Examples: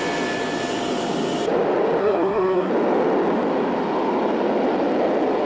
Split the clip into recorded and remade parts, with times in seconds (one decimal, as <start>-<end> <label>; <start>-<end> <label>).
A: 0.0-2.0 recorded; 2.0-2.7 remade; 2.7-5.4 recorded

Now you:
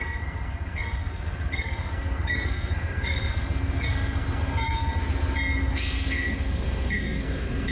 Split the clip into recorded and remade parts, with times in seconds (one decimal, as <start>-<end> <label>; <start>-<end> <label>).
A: 0.0-4.9 remade; 4.9-5.7 recorded; 5.7-7.7 remade

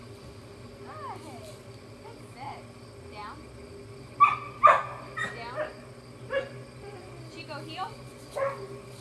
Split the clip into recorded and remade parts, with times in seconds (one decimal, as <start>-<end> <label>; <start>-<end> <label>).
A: 0.0-9.0 recorded